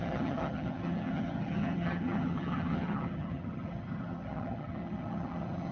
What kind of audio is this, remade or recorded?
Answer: remade